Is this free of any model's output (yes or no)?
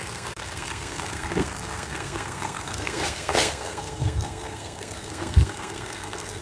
no